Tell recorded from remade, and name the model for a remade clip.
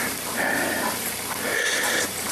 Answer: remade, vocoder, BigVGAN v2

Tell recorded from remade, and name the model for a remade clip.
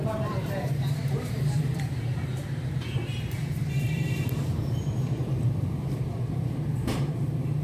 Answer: remade, vocoder, BigVGAN v2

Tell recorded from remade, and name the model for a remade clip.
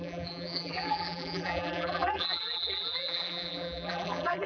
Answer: remade, vocoder, BigVGAN v2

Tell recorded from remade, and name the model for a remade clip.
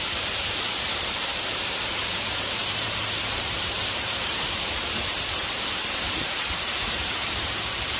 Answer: remade, vocoder, BigVGAN v2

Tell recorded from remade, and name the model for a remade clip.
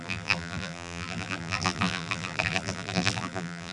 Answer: remade, vocoder, BigVGAN v2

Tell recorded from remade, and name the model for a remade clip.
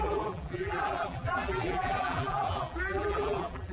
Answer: remade, vocoder, BigVGAN v2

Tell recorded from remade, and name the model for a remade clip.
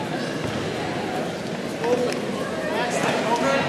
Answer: recorded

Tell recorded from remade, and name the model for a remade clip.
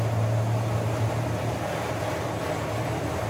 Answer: recorded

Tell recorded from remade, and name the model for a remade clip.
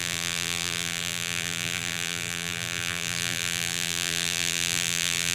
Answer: remade, vocoder, BigVGAN v2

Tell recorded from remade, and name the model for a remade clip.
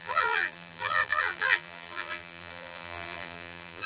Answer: remade, vocoder, BigVGAN v2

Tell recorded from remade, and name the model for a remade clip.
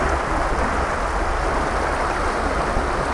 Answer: recorded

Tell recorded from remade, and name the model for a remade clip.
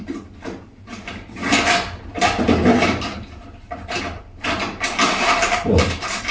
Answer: remade, vocoder, BigVGAN v2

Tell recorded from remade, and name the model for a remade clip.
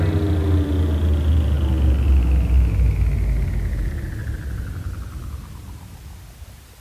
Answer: recorded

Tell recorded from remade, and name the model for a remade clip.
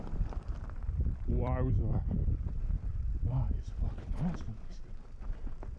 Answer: remade, vocoder, BigVGAN v2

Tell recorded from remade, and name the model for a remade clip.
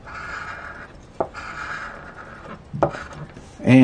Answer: recorded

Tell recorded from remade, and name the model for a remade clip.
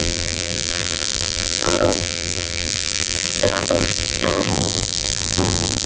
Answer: remade, vocoder, BigVGAN v2